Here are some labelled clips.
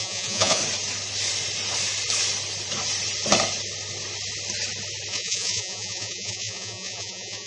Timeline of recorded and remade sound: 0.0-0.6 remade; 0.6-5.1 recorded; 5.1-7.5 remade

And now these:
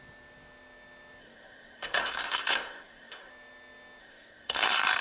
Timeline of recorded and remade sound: 0.0-1.2 recorded; 1.2-3.3 remade; 3.3-4.0 recorded; 4.0-5.0 remade

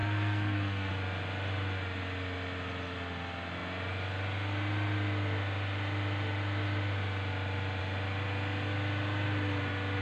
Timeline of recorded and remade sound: 0.0-0.9 remade; 0.9-10.0 recorded

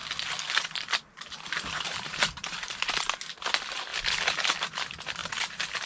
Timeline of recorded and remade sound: 0.0-3.9 remade; 3.9-4.5 recorded; 4.5-5.9 remade

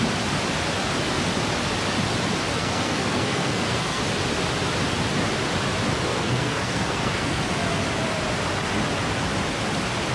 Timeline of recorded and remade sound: 0.0-2.5 recorded; 2.5-4.0 remade; 4.0-6.1 recorded; 6.1-7.4 remade; 7.4-10.1 recorded

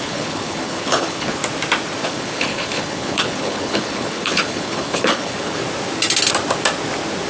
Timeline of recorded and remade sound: 0.0-1.4 remade; 1.4-2.0 recorded; 2.0-5.6 remade; 5.6-7.3 recorded

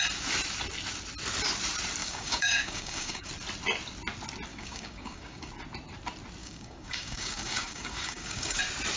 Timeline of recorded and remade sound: 0.0-2.0 recorded; 2.0-3.3 remade; 3.3-4.5 recorded; 4.5-5.5 remade; 5.5-6.4 recorded; 6.4-8.6 remade; 8.6-9.0 recorded

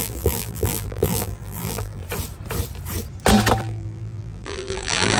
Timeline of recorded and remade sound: 0.0-2.0 remade; 2.0-3.6 recorded; 3.6-5.2 remade